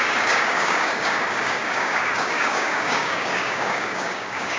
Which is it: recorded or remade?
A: remade